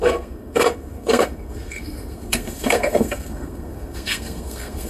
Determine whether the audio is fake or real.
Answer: fake